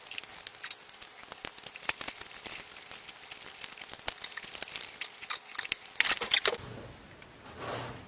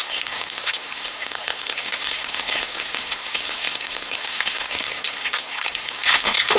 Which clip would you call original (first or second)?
first